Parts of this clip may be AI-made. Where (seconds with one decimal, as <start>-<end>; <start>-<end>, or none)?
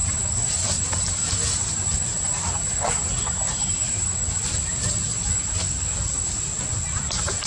none